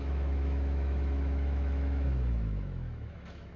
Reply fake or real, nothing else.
fake